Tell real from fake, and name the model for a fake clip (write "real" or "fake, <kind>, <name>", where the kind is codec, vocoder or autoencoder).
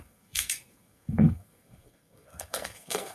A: fake, codec, SNAC